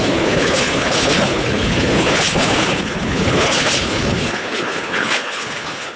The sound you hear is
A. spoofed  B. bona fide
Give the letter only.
A